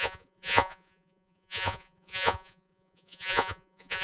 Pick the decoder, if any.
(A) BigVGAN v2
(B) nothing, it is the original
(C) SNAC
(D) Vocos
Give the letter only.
D